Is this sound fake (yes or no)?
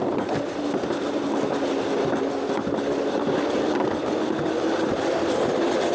no